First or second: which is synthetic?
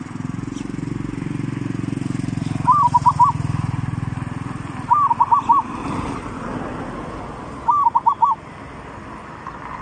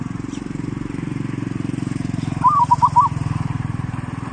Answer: second